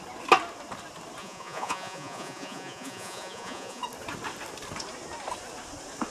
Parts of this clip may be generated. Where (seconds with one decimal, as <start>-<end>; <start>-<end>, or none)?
1.2-3.8